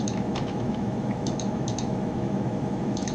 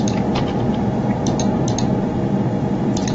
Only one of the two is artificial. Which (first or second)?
first